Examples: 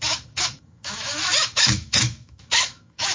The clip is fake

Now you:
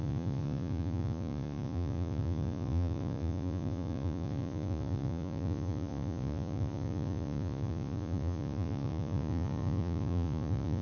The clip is fake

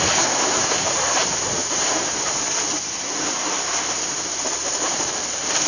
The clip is fake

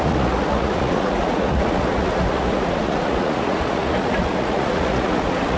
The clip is fake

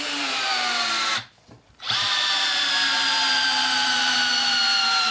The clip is fake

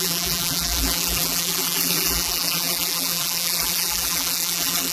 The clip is fake